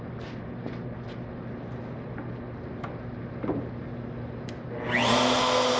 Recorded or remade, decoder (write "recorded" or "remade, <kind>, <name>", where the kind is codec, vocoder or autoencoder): recorded